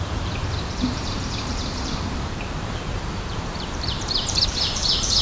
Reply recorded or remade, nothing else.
remade